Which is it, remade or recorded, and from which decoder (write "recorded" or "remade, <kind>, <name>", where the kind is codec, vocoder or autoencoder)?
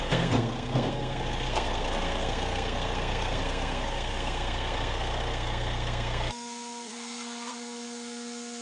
remade, codec, SNAC